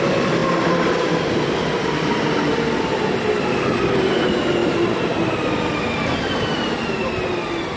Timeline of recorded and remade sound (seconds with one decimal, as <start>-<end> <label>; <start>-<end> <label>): 0.0-0.4 recorded; 0.4-3.8 remade; 3.8-4.6 recorded; 4.6-5.8 remade; 5.8-7.8 recorded